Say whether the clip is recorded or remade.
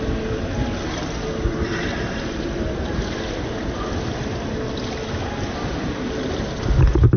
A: recorded